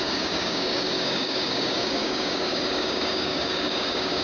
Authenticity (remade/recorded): remade